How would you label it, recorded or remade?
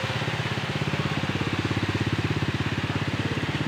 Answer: recorded